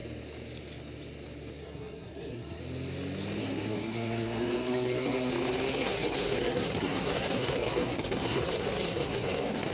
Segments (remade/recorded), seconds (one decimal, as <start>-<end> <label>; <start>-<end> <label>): 0.0-1.6 recorded; 1.6-2.6 remade; 2.6-3.4 recorded; 3.4-5.3 remade; 5.3-5.7 recorded; 5.7-9.7 remade